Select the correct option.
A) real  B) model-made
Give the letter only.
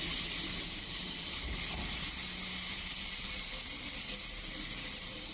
B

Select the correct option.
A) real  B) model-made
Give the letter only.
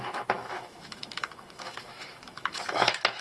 B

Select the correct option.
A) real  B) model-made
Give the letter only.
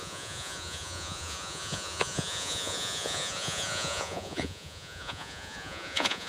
B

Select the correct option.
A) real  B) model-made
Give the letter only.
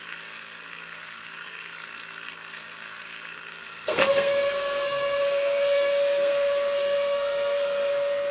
B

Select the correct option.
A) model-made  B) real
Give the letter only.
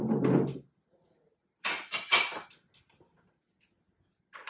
B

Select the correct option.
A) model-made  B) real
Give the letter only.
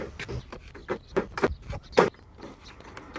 B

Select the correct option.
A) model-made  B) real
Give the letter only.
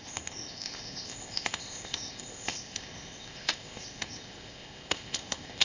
A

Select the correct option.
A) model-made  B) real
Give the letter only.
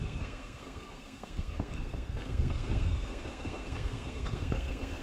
A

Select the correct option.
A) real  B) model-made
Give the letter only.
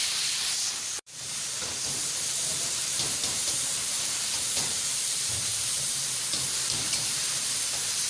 B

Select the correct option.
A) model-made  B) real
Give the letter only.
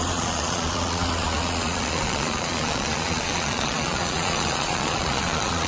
A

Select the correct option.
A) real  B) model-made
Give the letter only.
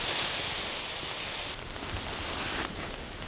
A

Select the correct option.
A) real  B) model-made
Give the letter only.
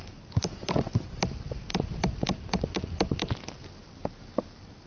A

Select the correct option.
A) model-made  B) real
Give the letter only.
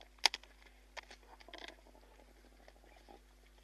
B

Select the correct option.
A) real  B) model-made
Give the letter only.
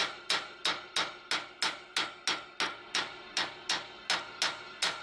A